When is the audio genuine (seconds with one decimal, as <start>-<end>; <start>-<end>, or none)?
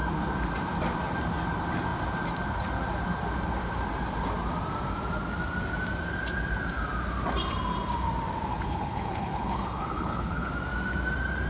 0.0-8.5; 10.5-11.5